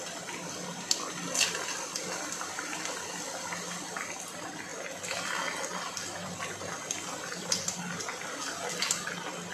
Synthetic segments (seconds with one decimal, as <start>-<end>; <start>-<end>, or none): none